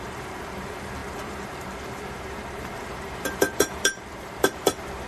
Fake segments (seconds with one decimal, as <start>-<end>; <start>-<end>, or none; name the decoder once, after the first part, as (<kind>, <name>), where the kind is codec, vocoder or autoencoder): 0.0-5.1 (vocoder, BigVGAN v2)